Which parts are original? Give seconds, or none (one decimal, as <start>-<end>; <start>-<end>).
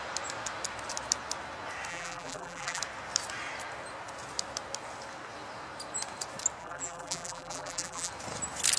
0.0-1.9; 2.8-6.6; 8.1-8.8